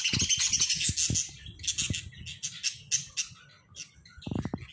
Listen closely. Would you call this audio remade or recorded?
recorded